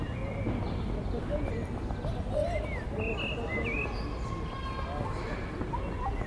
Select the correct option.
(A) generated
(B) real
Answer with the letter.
B